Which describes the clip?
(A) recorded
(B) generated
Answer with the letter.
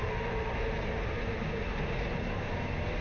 A